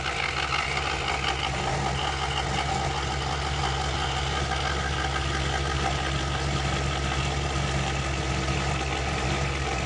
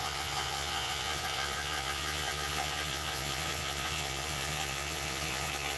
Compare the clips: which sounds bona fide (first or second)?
first